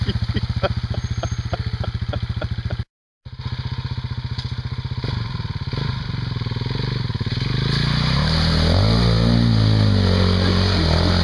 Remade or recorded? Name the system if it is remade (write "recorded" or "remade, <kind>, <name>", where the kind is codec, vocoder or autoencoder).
recorded